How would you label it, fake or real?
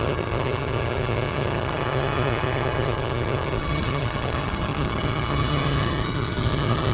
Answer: fake